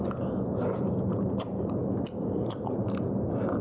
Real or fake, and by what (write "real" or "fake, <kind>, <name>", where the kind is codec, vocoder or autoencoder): real